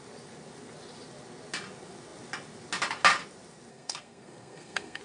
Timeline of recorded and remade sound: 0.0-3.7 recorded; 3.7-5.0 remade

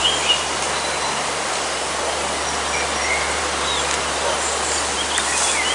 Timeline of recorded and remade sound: 0.0-5.7 recorded

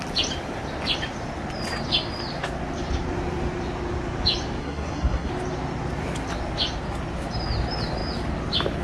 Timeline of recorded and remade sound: 0.0-4.6 recorded; 4.6-5.3 remade; 5.3-8.8 recorded

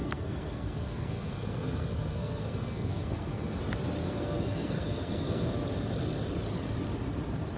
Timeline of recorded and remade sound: 0.0-3.6 remade; 3.6-4.0 recorded; 4.0-5.5 remade; 5.5-7.6 recorded

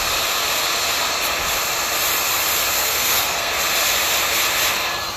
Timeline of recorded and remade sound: 0.0-2.8 recorded; 2.8-3.5 remade; 3.5-5.2 recorded

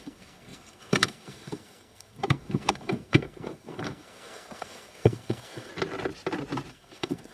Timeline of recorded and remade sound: 0.0-5.7 remade; 5.7-6.7 recorded; 6.7-7.3 remade